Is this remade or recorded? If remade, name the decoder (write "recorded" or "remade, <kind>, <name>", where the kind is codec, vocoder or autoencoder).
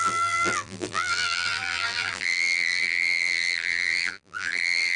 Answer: remade, vocoder, BigVGAN v2